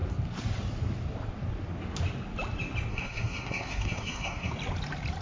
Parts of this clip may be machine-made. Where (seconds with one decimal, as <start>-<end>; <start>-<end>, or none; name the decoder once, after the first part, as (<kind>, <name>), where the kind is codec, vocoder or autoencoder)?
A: 2.9-4.5 (codec, SNAC)